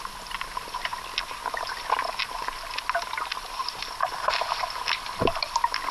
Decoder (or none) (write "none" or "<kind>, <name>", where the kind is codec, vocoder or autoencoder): none